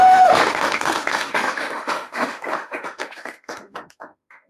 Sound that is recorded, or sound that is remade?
remade